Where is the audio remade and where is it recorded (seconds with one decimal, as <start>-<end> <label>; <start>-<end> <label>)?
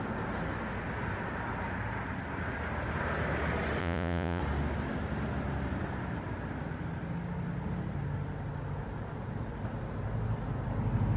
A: 0.0-3.8 recorded; 3.8-4.4 remade; 4.4-11.2 recorded